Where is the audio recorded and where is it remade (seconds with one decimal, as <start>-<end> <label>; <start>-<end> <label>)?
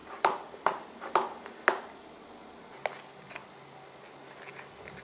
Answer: 0.0-5.0 recorded